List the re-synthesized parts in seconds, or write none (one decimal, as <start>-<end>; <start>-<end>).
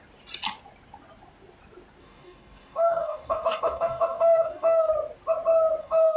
2.0-4.9; 5.8-6.2